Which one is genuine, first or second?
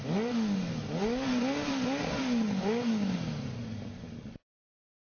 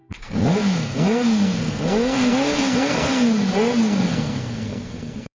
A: first